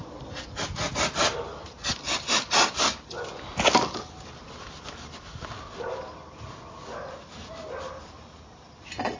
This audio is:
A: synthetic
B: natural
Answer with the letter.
B